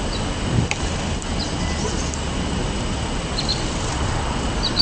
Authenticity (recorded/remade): recorded